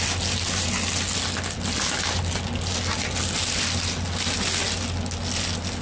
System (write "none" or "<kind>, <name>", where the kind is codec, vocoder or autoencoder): none